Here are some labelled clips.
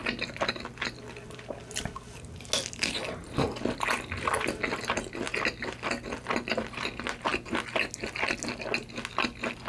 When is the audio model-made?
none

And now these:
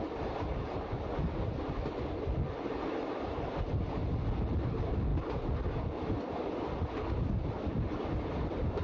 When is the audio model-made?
none

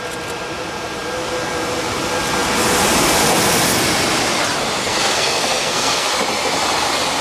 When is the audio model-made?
4.8-6.1